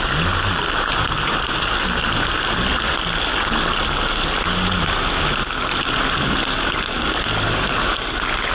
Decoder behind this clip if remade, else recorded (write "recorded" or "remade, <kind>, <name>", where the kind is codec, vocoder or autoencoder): recorded